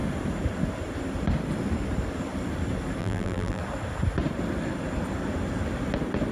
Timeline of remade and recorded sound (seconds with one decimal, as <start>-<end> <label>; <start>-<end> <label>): 0.0-3.0 recorded; 3.0-3.6 remade; 3.6-6.3 recorded